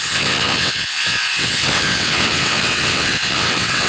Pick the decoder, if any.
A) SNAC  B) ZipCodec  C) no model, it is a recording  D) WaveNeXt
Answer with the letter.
D